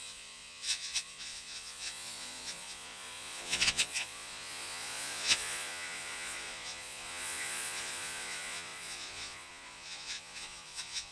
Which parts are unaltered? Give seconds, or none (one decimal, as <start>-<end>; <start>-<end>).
none